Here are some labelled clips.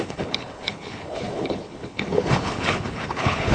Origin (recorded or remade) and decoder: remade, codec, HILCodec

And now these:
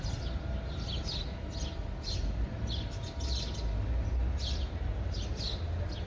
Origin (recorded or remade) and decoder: recorded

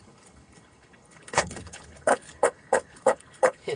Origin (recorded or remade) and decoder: remade, codec, HILCodec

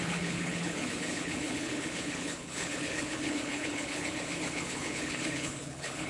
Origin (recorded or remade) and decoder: remade, codec, HILCodec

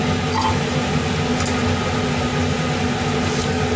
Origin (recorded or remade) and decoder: recorded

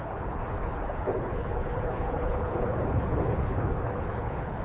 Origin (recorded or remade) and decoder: remade, codec, HILCodec